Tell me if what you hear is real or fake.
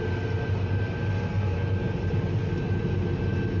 real